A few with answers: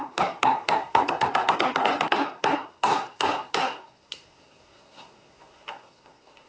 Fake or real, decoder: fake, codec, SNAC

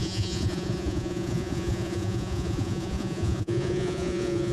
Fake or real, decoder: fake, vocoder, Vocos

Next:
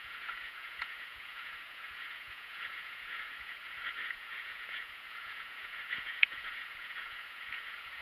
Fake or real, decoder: fake, vocoder, Vocos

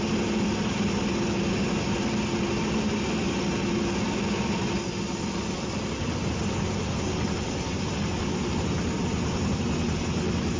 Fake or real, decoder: real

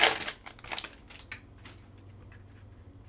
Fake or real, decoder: real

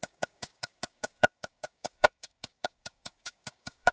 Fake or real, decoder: fake, codec, DAC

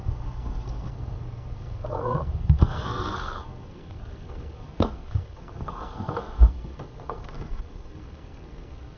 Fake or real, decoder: fake, codec, SNAC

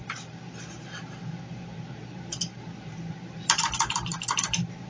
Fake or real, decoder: fake, vocoder, BigVGAN v2